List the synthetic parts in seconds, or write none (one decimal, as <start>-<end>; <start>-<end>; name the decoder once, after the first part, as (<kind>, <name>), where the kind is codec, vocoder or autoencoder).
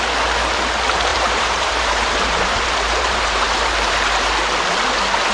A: 1.1-4.3 (vocoder, BigVGAN v2)